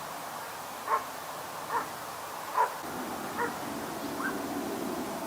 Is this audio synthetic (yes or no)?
no